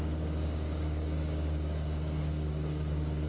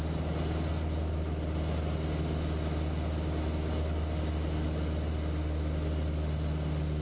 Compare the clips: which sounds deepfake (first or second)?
first